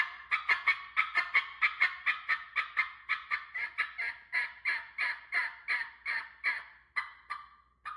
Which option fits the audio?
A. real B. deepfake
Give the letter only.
A